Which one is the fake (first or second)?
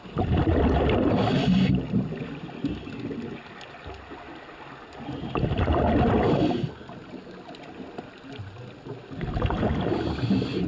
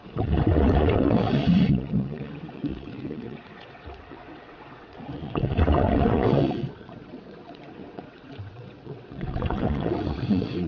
second